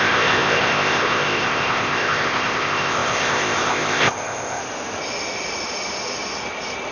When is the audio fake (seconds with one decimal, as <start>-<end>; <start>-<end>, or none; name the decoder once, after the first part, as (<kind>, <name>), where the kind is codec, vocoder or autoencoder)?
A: 0.0-4.6 (codec, ZipCodec)